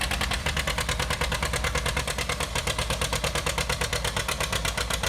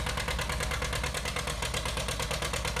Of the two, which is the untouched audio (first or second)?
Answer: second